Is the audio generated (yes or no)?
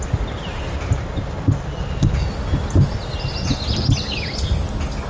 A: no